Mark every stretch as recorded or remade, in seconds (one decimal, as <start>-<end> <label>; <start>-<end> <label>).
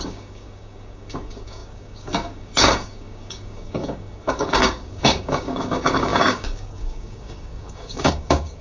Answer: 0.0-8.6 remade